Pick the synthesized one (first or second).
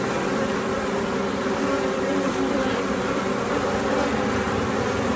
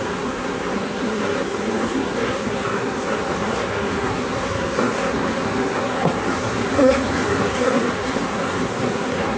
second